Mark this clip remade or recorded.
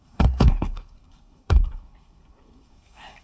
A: remade